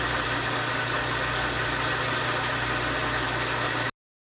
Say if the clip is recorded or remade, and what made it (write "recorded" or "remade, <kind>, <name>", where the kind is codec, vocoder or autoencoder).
recorded